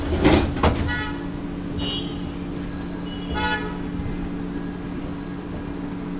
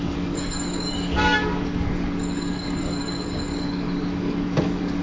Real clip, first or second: first